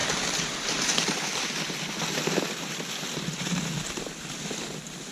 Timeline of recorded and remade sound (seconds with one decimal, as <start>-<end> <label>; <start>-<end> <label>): 0.0-5.1 recorded